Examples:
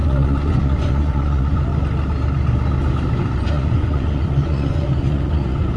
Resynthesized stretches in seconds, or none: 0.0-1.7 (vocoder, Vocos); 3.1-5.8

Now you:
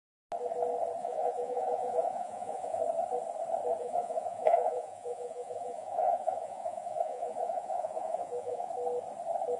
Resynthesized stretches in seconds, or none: 1.0-2.8 (vocoder, Vocos); 3.8-8.7

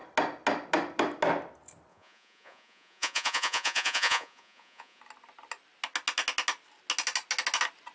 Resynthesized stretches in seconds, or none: 1.9-5.0 (vocoder, Vocos)

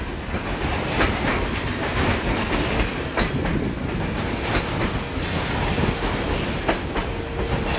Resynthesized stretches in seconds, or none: none

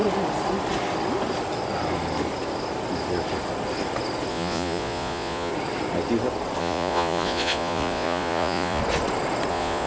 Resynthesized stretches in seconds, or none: 4.3-5.5 (vocoder, Vocos); 6.6-8.8; 9.5-9.9